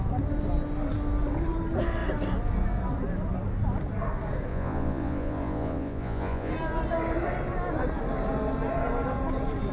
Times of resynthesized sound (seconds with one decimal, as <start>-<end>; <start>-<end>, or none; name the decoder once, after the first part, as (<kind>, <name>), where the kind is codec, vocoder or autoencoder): 4.5-6.5 (vocoder, Vocos)